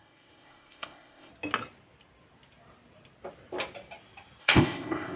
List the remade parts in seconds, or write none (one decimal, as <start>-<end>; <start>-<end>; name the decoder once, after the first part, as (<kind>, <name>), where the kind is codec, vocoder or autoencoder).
0.0-1.3 (codec, ZipCodec); 4.4-5.2